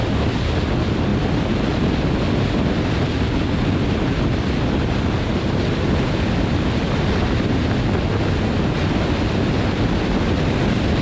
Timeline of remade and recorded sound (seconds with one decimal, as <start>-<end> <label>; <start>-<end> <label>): 0.0-11.0 recorded